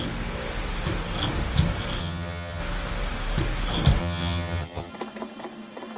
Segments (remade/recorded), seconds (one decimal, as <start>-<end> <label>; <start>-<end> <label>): 0.0-2.0 recorded; 2.0-2.6 remade; 2.6-4.0 recorded; 4.0-4.9 remade; 4.9-6.0 recorded

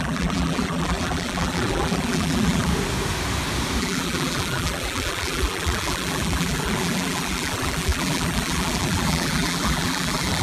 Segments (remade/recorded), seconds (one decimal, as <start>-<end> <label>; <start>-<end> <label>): 0.0-2.7 remade; 2.7-3.8 recorded; 3.8-10.4 remade

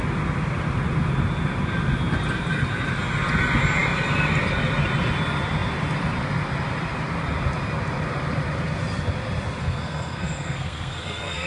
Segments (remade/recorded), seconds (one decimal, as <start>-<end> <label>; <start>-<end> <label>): 0.0-9.6 recorded; 9.6-11.5 remade